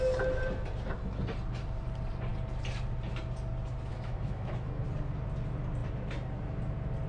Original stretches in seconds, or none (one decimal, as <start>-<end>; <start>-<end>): 0.0-3.9; 4.8-7.1